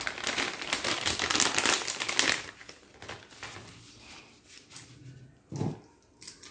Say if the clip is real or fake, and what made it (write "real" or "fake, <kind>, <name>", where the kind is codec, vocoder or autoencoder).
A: real